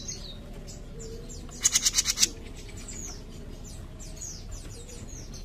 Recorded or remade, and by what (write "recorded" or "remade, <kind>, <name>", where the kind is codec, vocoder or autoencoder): recorded